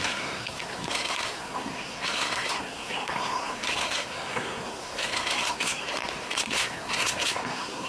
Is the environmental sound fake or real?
fake